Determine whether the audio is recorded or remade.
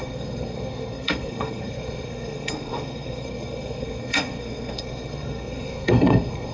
remade